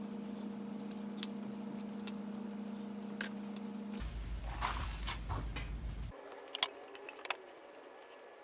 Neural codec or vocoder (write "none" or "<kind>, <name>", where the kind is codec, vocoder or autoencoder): none